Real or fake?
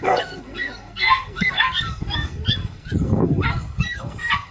fake